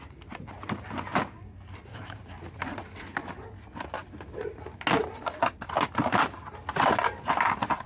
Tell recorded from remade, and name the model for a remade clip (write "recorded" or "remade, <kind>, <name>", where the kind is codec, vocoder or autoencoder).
recorded